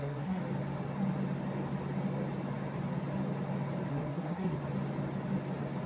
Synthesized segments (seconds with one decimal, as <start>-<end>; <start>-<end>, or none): 0.0-0.4; 3.9-4.6